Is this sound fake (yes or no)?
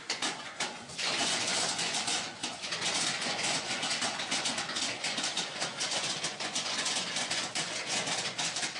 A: yes